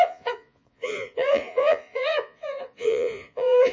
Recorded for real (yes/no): no